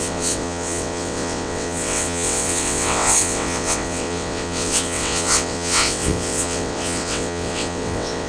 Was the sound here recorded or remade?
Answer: remade